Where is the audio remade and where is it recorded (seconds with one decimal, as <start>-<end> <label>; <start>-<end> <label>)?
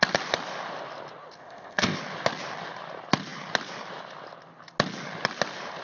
0.0-1.4 recorded; 1.4-2.0 remade; 2.0-5.8 recorded